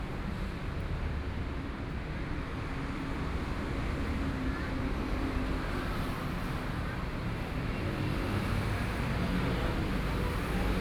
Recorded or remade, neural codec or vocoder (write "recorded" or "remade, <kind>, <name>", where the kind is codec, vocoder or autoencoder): recorded